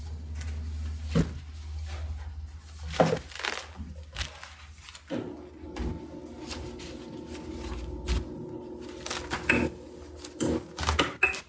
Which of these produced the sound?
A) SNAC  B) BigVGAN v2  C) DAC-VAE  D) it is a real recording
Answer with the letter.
D